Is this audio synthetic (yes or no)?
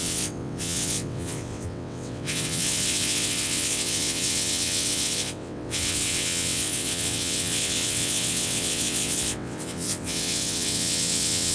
yes